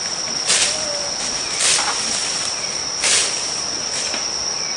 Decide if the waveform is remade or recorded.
recorded